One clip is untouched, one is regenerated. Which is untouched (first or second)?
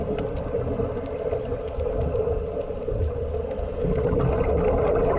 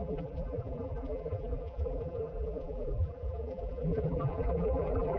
first